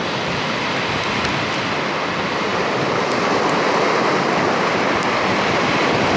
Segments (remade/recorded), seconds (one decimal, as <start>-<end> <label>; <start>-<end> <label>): 0.0-6.2 recorded